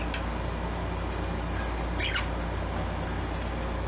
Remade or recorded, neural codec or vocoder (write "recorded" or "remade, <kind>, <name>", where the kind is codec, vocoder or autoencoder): recorded